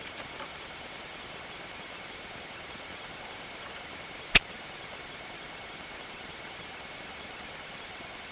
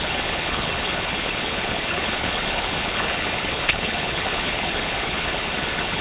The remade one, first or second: second